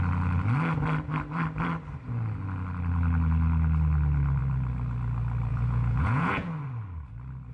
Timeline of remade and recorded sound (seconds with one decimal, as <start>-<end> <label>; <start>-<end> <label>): 0.0-5.5 recorded; 5.5-6.5 remade; 6.5-7.5 recorded